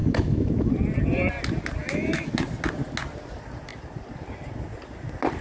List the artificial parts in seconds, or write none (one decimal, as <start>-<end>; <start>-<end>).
0.0-0.7; 1.8-2.3